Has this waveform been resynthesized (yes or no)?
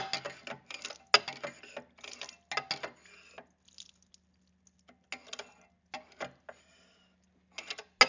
no